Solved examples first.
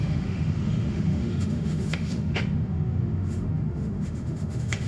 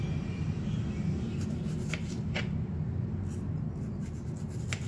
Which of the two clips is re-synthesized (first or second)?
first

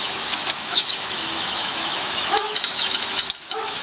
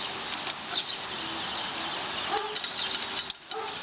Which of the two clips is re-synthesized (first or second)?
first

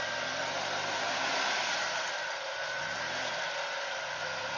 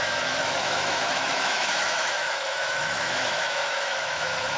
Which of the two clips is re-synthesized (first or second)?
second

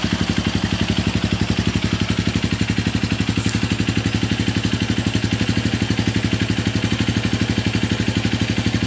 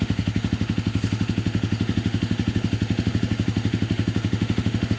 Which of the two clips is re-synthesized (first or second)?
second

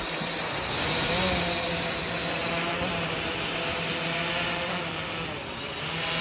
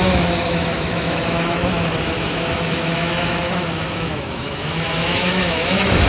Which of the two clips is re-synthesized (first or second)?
second